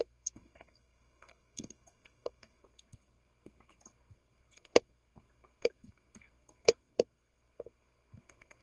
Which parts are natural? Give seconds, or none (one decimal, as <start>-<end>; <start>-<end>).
none